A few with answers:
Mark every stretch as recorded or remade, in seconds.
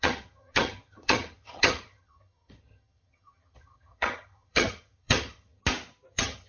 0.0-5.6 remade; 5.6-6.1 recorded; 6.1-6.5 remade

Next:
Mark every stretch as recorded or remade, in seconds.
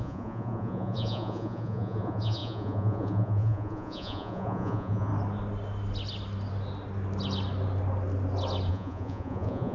0.0-5.1 remade; 5.1-8.7 recorded; 8.7-9.7 remade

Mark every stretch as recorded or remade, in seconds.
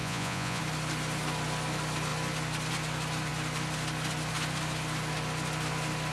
0.0-0.6 remade; 0.6-6.1 recorded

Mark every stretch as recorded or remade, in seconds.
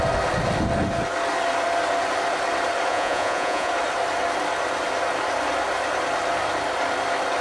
0.0-2.9 recorded; 2.9-3.7 remade; 3.7-7.4 recorded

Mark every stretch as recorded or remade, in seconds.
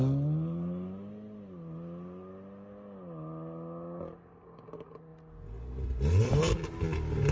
0.0-7.3 recorded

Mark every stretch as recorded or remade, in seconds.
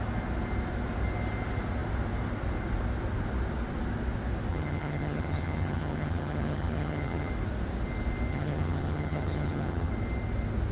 0.0-4.5 recorded; 4.5-7.3 remade; 7.3-8.3 recorded; 8.3-9.9 remade; 9.9-10.7 recorded